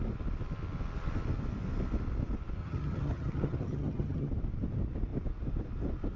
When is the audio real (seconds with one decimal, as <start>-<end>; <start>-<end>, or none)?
0.0-2.6; 4.3-6.2